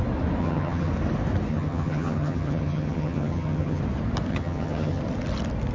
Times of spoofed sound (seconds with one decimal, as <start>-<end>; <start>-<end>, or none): 0.4-0.9; 1.5-3.8; 4.3-5.0